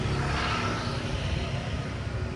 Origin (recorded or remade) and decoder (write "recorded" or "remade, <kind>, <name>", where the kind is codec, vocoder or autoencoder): recorded